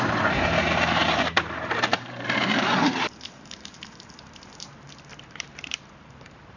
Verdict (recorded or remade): remade